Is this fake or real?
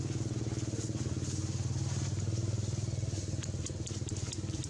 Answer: real